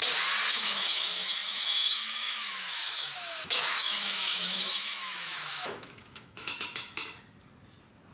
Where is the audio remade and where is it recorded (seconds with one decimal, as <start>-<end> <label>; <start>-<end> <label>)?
0.0-0.5 recorded; 0.5-7.0 remade; 7.0-8.1 recorded

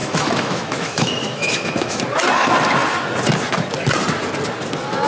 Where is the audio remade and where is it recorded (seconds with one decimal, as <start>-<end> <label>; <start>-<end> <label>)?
0.0-2.0 remade; 2.0-5.1 recorded

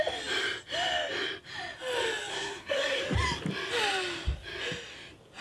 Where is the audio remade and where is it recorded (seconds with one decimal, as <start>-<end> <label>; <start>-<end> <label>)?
0.0-2.3 recorded; 2.3-3.0 remade; 3.0-5.4 recorded

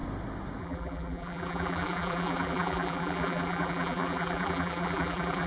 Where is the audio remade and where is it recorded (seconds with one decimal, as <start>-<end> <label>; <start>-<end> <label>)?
0.0-0.6 recorded; 0.6-5.5 remade

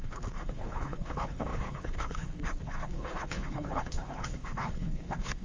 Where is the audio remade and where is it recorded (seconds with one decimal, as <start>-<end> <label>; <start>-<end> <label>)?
0.0-5.4 remade